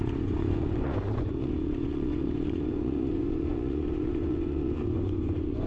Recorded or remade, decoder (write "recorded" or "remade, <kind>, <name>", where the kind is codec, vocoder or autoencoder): remade, vocoder, Vocos